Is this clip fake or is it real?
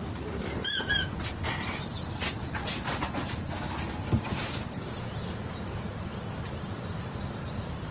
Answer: real